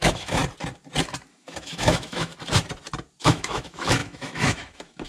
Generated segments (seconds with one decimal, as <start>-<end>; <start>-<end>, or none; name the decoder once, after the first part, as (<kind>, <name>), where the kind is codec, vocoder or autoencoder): 0.0-0.4 (autoencoder, DAC-VAE); 1.3-2.3; 3.2-5.1